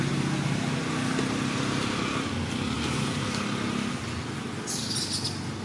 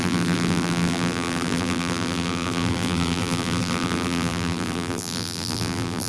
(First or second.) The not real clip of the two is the second